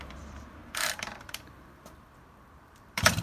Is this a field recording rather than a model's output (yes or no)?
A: no